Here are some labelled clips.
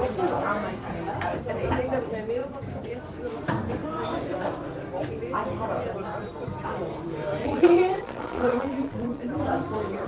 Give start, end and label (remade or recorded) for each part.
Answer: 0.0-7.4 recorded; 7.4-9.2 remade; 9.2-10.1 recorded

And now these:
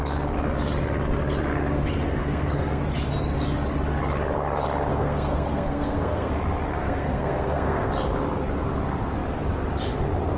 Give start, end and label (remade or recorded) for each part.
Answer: 0.0-2.2 recorded; 2.2-2.8 remade; 2.8-4.9 recorded; 4.9-6.3 remade; 6.3-6.8 recorded; 6.8-7.9 remade; 7.9-10.4 recorded